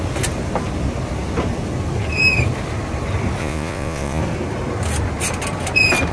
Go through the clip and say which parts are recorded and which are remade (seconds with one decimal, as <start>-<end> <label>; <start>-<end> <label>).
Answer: 0.0-3.4 recorded; 3.4-4.2 remade; 4.2-6.1 recorded